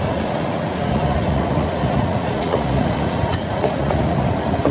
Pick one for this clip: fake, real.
fake